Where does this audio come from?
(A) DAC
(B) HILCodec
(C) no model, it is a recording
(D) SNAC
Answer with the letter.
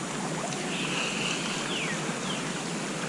C